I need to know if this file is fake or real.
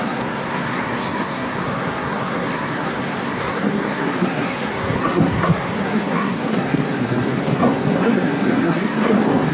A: fake